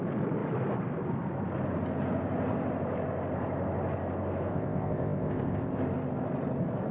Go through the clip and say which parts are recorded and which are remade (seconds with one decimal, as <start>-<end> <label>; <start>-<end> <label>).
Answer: 0.0-4.5 recorded; 4.5-5.8 remade; 5.8-6.9 recorded